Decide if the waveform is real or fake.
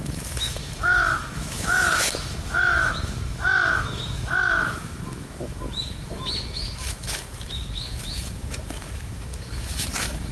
fake